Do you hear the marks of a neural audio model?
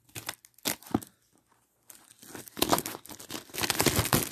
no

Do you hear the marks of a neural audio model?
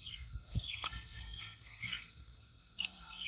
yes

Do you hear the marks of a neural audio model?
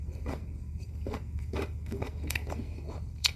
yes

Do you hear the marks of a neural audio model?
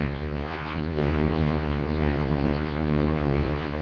yes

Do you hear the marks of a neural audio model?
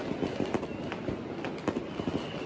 no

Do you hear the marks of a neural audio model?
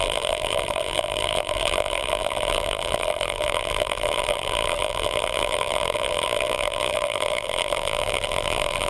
yes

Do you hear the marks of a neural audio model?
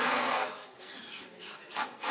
yes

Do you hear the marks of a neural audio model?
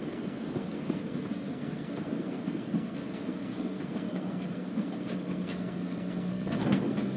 yes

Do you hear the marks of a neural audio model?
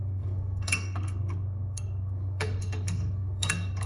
yes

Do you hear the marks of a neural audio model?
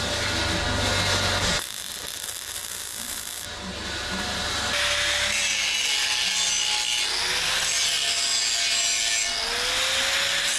no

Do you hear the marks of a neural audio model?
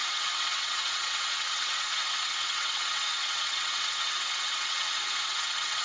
yes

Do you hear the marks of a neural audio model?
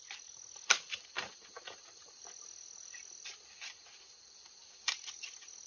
yes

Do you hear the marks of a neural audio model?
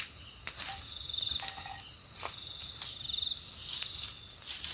no